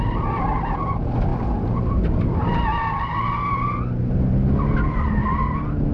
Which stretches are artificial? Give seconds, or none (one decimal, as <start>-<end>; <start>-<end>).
none